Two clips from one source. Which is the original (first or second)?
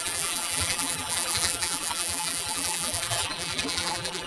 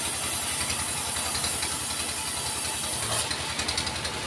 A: second